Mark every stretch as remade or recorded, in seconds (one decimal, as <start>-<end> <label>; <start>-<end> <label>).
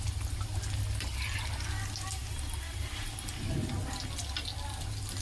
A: 0.0-5.2 recorded